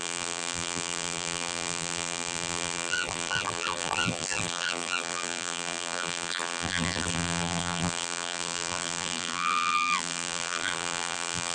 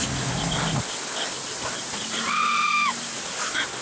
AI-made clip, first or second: first